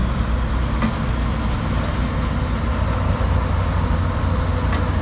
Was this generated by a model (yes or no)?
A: no